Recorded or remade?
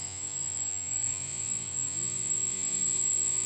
remade